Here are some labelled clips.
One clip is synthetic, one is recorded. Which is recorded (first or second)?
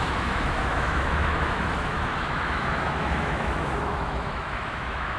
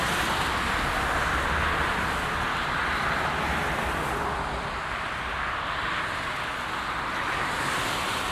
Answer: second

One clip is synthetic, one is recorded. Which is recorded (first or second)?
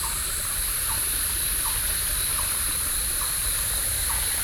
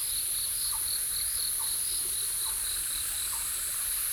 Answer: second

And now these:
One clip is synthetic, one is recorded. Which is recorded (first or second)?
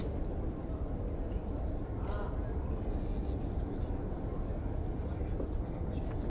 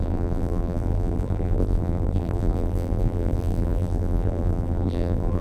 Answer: first